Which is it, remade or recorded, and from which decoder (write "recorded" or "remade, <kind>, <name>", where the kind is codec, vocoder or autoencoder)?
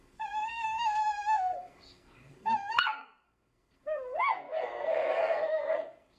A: remade, codec, SNAC